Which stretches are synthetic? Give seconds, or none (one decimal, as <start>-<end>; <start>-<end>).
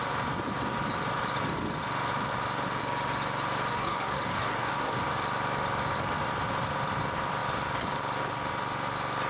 3.7-5.0